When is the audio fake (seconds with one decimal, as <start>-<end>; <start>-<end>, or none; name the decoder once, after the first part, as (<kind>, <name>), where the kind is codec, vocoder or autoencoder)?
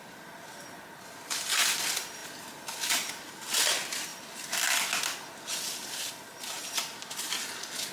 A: none